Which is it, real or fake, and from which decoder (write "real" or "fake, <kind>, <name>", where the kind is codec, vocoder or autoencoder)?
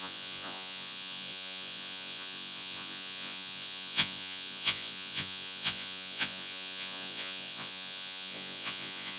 fake, vocoder, Vocos